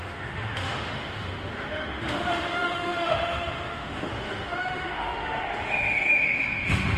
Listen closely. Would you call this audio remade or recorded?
remade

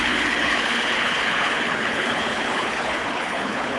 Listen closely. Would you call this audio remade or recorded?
remade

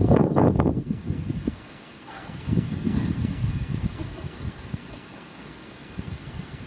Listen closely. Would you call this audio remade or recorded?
remade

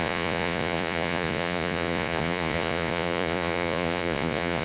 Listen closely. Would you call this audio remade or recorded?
remade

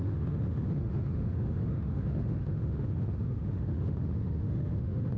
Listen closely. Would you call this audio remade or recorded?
remade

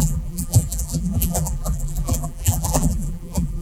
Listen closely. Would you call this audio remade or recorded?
remade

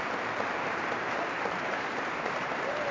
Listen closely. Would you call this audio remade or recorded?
remade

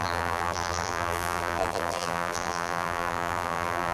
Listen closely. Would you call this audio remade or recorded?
remade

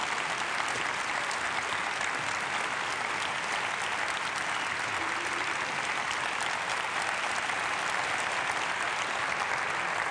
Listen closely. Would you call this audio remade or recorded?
recorded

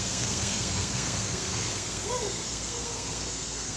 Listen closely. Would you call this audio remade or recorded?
remade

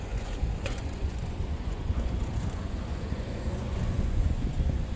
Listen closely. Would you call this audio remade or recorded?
remade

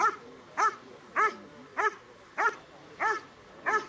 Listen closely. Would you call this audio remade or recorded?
recorded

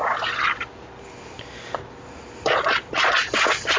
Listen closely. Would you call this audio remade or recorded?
recorded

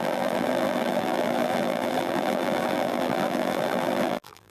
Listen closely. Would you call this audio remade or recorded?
remade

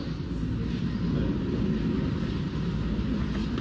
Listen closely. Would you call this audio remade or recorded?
recorded